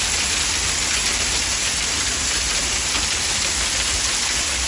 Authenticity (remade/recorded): recorded